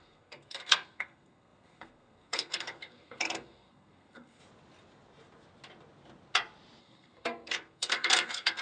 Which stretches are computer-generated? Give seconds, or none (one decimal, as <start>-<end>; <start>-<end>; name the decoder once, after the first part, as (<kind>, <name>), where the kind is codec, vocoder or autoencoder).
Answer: 0.0-4.4 (codec, SNAC); 6.8-8.6